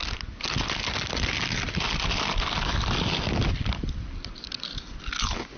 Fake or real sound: real